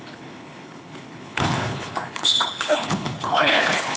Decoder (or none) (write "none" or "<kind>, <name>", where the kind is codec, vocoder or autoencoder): codec, HILCodec